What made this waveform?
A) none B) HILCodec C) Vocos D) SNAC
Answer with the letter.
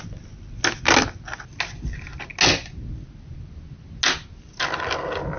A